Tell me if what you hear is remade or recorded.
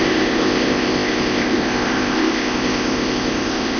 remade